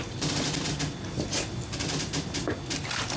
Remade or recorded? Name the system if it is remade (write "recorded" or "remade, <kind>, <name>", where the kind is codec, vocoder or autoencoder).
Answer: recorded